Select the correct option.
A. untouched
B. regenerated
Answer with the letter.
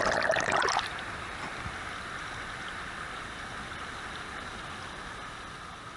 A